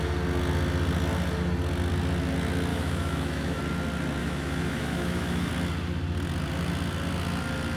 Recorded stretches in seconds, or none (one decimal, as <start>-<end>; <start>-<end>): 0.0-2.7; 3.6-4.2; 5.5-7.8